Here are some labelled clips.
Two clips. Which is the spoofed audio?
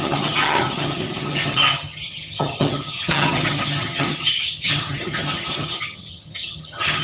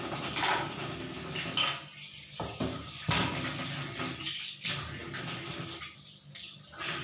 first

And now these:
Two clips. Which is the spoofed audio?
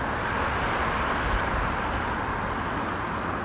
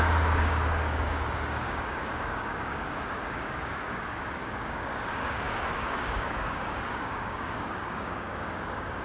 second